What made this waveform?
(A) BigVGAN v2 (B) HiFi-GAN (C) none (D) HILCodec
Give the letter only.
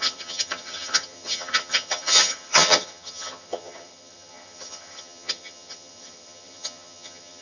B